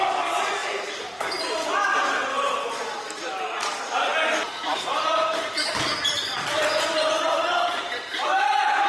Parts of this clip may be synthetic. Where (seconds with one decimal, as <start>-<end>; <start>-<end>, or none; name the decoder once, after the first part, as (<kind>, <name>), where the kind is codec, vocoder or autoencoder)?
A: 0.0-8.9 (vocoder, BigVGAN v2)